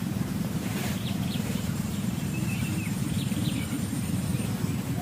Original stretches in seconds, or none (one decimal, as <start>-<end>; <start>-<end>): 4.3-5.0